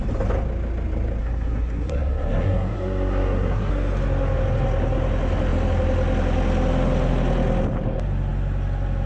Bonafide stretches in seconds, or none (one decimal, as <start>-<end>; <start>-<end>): 0.0-1.2; 3.7-9.1